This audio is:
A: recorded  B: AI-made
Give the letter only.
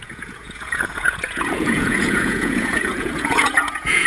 B